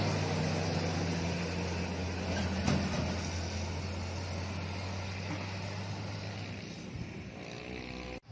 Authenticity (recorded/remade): recorded